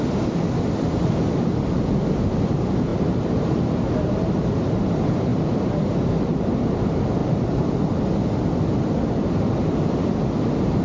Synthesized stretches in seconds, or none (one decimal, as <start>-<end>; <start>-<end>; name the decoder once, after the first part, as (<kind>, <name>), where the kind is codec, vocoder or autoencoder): none